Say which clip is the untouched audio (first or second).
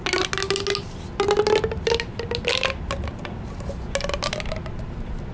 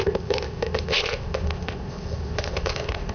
first